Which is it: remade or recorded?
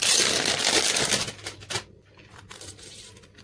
recorded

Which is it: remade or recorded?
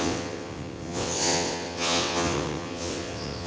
remade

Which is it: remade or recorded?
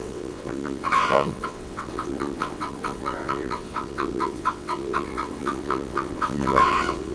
remade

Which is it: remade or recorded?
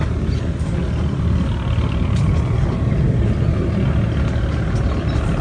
recorded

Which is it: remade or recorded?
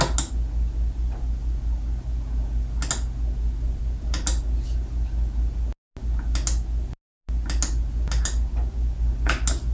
recorded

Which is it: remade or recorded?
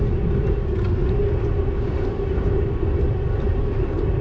recorded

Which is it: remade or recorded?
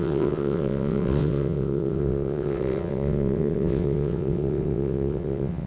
remade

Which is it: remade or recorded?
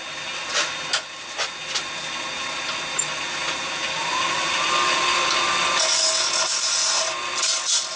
recorded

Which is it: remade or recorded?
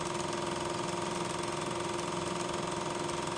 recorded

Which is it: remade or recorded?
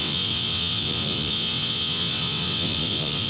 remade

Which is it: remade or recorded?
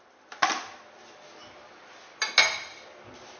recorded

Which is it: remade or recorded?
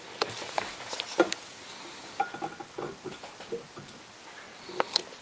recorded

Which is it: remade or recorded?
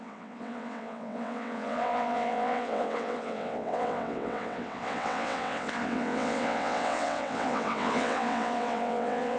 remade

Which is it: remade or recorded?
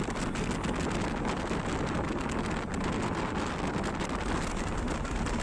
recorded